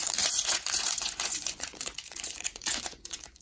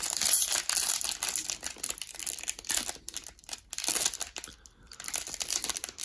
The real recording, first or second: second